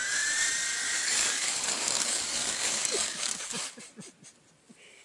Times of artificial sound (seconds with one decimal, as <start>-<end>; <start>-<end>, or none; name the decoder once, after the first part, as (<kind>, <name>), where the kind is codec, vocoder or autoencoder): 0.8-3.8 (codec, DAC)